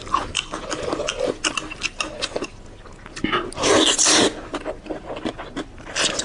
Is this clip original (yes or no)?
yes